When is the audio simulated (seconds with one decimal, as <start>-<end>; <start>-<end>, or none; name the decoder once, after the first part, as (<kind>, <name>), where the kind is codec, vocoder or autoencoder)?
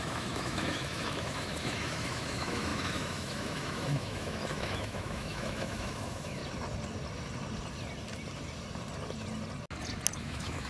0.0-6.4 (autoencoder, DAC-VAE); 10.2-10.7